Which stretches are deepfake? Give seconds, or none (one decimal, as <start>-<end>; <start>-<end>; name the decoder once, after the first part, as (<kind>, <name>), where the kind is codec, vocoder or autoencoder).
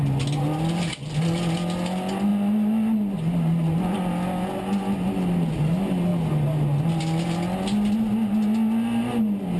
none